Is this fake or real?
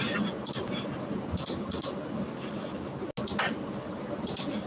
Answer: real